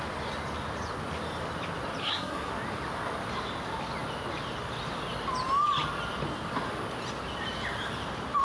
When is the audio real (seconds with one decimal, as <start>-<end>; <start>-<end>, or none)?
0.0-2.0; 2.5-8.4